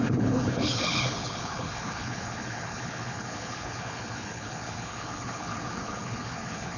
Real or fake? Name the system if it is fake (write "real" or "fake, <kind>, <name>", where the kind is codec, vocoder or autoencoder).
fake, codec, HILCodec